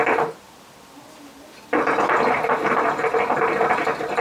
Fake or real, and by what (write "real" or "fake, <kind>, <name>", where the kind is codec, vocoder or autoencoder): real